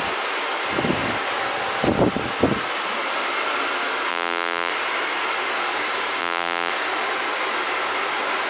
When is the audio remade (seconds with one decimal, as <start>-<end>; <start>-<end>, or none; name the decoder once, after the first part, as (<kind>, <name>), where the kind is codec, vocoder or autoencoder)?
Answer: 4.1-4.7 (vocoder, BigVGAN v2); 6.2-6.7